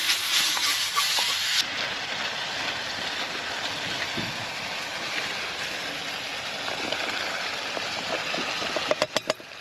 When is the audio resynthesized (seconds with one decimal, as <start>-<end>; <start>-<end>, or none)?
none